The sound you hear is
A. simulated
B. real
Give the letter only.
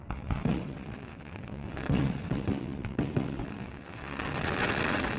A